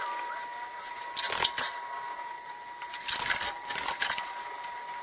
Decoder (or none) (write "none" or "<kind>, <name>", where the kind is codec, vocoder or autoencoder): none